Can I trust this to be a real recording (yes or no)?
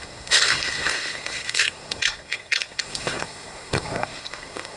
no